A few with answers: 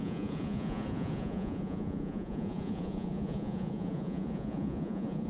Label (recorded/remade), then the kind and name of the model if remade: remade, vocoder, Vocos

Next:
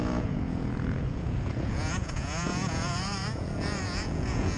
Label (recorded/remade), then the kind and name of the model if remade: remade, vocoder, Vocos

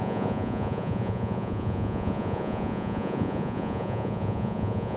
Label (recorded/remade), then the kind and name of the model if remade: remade, vocoder, Vocos